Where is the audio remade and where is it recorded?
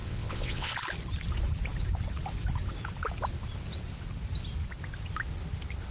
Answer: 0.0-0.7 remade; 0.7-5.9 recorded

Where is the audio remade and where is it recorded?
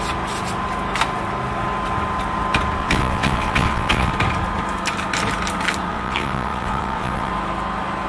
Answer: 0.0-2.8 recorded; 2.8-4.1 remade; 4.1-5.9 recorded; 5.9-7.3 remade; 7.3-8.1 recorded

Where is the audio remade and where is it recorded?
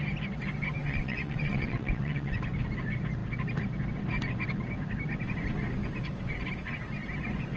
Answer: 0.0-0.8 recorded; 0.8-2.4 remade; 2.4-7.6 recorded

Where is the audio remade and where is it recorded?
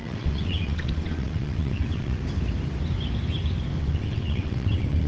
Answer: 0.0-2.2 remade; 2.2-3.8 recorded; 3.8-5.1 remade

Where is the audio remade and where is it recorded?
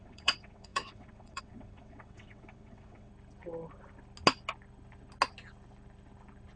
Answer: 0.0-3.1 remade; 3.1-6.6 recorded